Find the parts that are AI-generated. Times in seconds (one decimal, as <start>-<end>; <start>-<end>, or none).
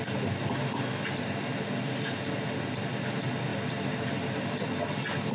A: none